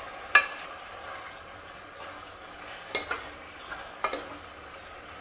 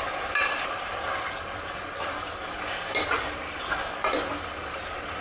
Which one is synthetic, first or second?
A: second